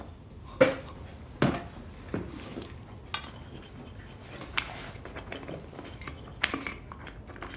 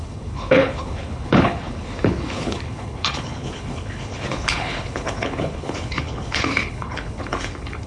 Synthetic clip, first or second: second